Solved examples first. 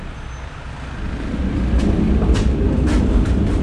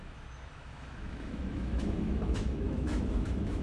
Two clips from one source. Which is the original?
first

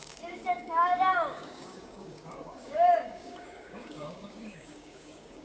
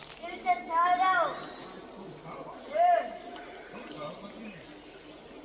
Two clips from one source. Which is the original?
second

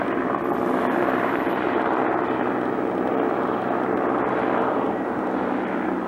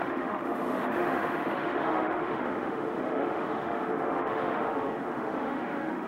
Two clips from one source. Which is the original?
first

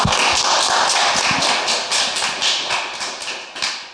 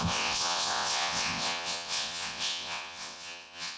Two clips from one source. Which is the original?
first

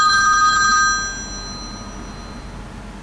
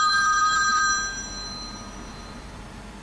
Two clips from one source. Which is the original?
first